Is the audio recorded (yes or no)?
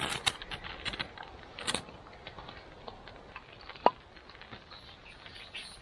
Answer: yes